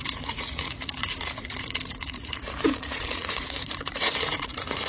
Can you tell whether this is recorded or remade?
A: remade